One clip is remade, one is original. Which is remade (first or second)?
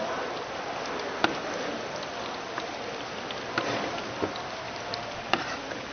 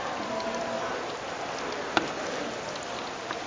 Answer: first